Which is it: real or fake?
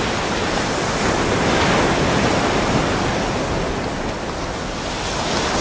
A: real